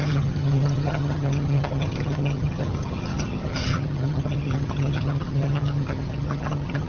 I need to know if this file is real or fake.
fake